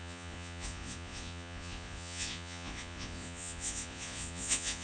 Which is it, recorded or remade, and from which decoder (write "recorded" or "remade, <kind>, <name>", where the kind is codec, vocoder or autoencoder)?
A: remade, vocoder, Vocos